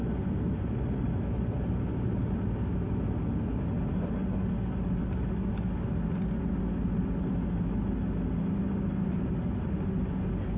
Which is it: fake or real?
real